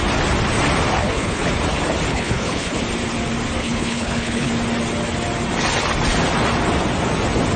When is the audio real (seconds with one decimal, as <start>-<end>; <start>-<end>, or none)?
0.0-1.0; 1.5-2.1; 2.8-3.6; 4.5-7.6